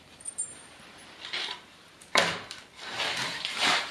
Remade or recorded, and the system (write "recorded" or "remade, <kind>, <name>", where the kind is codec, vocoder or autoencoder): remade, vocoder, BigVGAN v2